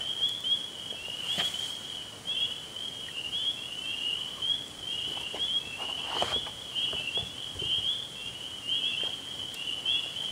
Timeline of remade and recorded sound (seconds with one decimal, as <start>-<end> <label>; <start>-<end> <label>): 0.0-3.4 remade; 3.4-4.2 recorded; 4.2-8.2 remade; 8.2-10.3 recorded